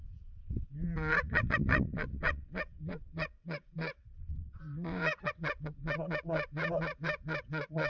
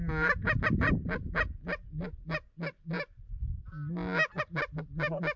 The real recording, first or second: second